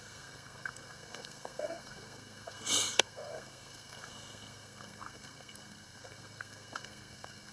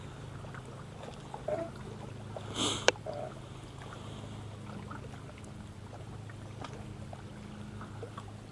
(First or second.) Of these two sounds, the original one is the second